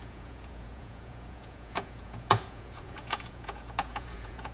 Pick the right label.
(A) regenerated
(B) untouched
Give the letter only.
A